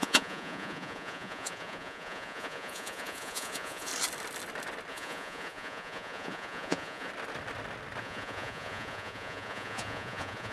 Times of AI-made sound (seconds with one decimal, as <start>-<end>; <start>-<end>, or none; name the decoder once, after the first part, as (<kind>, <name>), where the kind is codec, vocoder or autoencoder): 0.0-3.9 (vocoder, Vocos); 4.9-7.1; 8.0-10.5